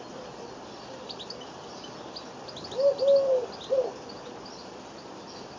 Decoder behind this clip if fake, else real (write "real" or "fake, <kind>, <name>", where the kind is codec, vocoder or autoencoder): real